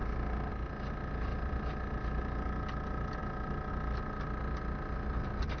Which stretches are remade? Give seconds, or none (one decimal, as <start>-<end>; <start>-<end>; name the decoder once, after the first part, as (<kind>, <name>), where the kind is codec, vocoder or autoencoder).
none